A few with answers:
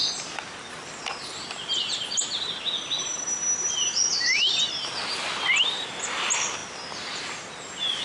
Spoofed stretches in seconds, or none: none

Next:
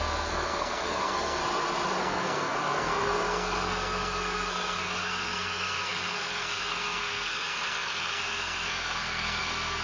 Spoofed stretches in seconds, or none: 0.0-1.4 (codec, SNAC); 2.0-9.8

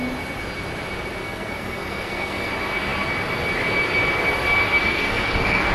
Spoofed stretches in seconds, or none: 1.2-2.5 (codec, SNAC); 4.8-5.7

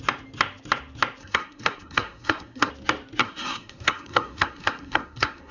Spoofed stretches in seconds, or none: 1.2-2.7 (codec, SNAC); 3.2-5.5